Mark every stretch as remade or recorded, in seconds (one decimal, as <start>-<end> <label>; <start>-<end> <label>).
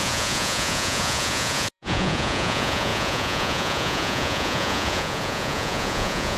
0.0-6.4 remade